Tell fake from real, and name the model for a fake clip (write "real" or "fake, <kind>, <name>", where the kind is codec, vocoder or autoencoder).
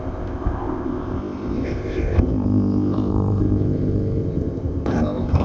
fake, codec, ZipCodec